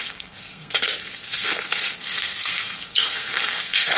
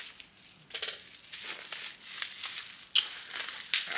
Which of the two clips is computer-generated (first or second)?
first